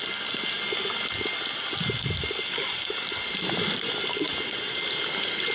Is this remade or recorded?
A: recorded